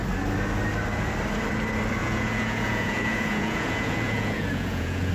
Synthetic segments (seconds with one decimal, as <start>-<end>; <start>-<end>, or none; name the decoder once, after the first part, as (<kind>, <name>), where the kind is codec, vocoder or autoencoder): 2.0-5.1 (vocoder, Vocos)